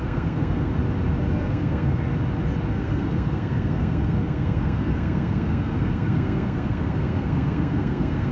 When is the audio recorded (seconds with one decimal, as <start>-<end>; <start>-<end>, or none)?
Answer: 0.7-1.3; 2.1-2.7